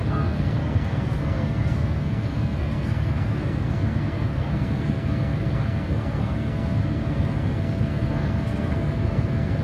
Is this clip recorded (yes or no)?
no